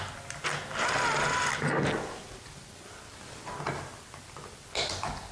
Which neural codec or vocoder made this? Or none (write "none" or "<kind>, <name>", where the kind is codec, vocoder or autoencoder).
none